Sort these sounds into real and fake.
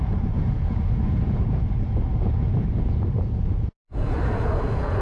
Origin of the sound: fake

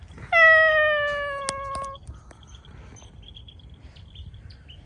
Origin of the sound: real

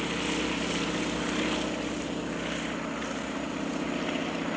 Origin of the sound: real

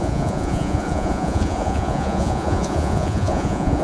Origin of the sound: fake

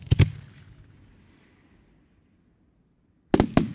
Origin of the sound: real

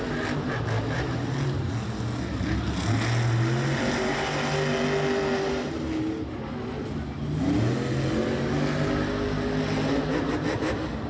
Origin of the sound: real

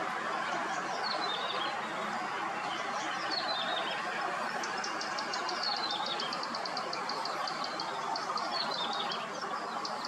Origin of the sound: real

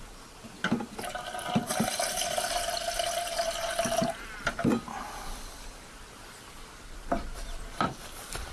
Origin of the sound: real